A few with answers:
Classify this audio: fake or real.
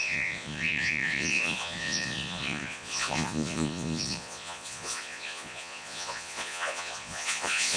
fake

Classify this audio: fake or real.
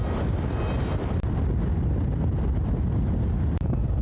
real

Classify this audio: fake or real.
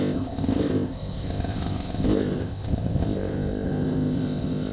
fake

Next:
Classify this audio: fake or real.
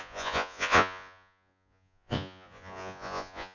fake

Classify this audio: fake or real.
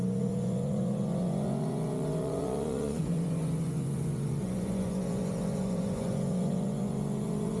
fake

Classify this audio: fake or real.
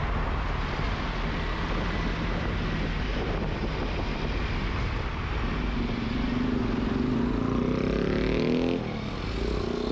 real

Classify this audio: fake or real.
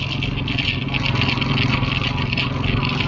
real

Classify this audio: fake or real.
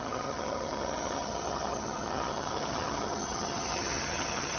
fake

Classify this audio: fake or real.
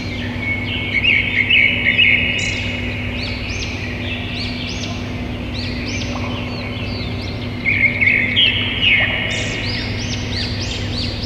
real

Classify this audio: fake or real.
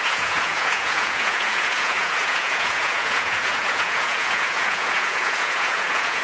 fake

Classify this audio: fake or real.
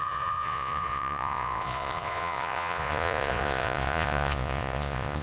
fake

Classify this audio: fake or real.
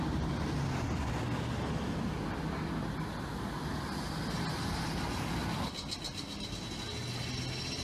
real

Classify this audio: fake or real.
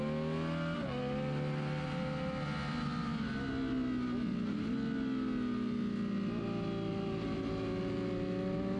real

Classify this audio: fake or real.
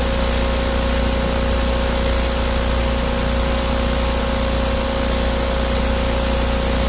real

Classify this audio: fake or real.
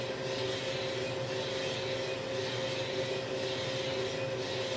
real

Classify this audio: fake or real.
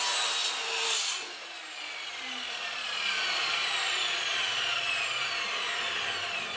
real